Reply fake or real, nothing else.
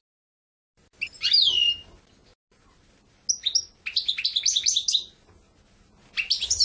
real